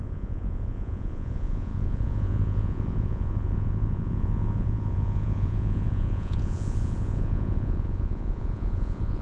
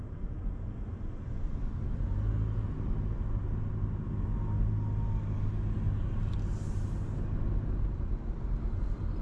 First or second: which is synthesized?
first